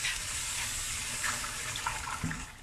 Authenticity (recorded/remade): remade